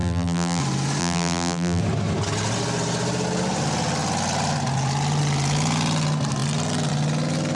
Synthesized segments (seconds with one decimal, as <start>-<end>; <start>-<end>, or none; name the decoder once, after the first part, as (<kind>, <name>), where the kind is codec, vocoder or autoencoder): 0.0-0.6 (vocoder, BigVGAN v2); 1.0-1.8